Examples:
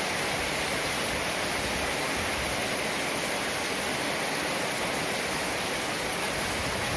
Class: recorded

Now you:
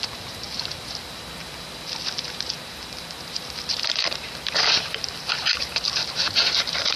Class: remade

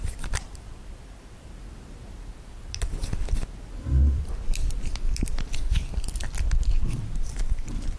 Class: remade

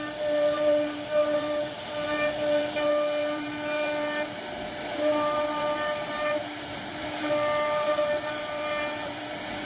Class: remade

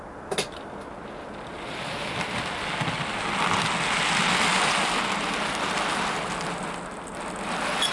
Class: recorded